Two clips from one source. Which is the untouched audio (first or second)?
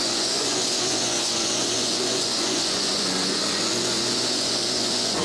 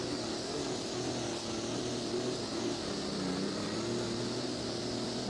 second